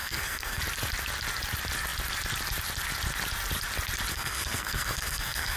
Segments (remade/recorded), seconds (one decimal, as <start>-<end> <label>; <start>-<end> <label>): 0.0-0.6 remade; 0.6-4.1 recorded; 4.1-5.6 remade